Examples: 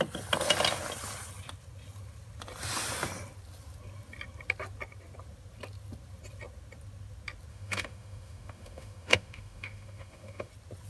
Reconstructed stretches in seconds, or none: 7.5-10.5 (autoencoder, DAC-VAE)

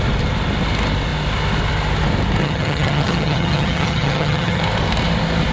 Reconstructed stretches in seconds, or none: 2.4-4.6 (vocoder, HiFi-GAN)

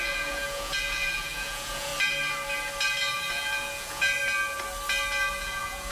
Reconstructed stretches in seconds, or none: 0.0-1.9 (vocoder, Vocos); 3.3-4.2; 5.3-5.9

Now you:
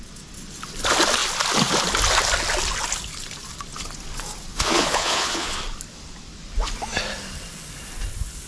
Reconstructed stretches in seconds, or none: 4.5-5.6 (vocoder, Vocos)